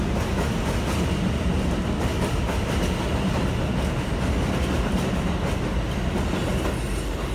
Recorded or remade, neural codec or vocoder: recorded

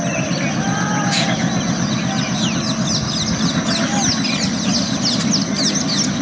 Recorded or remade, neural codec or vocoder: recorded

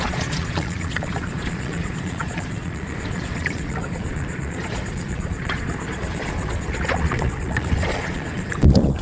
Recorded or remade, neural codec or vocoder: remade, vocoder, Vocos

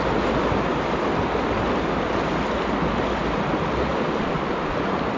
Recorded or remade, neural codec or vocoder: recorded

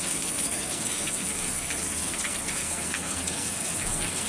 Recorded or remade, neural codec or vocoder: remade, codec, SNAC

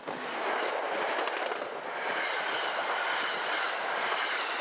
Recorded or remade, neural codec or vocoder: recorded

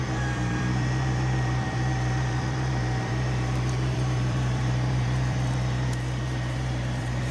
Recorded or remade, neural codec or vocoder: remade, vocoder, BigVGAN v2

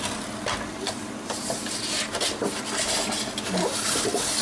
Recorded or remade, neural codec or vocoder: recorded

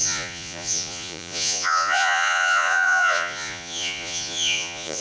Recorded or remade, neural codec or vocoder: remade, vocoder, Vocos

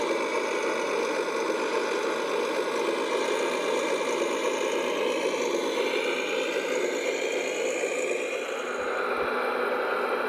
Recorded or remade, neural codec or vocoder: recorded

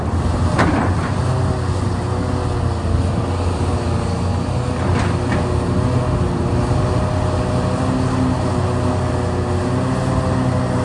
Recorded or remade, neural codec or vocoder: recorded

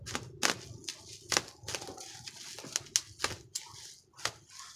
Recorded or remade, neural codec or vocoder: recorded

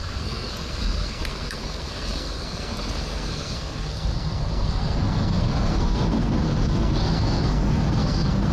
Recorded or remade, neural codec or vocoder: remade, codec, SNAC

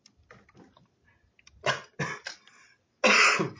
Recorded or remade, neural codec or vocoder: recorded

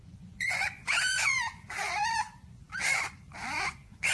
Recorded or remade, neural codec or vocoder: remade, vocoder, Vocos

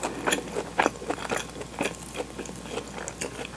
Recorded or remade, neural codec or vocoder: recorded